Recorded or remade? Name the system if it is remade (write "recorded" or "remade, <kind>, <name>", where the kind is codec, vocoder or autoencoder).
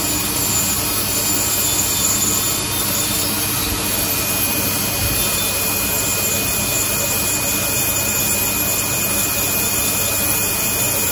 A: recorded